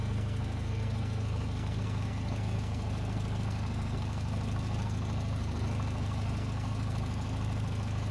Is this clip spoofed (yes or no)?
yes